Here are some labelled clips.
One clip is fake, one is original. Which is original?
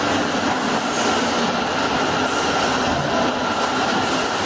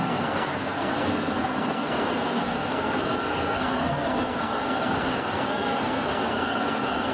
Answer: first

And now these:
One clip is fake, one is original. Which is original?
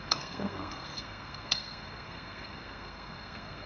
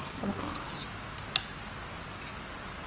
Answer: second